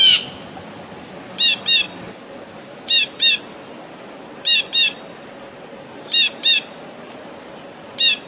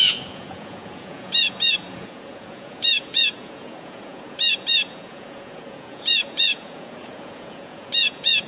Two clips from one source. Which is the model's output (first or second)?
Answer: second